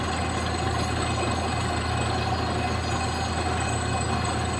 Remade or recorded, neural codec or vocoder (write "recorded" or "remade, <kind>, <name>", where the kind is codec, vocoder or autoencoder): recorded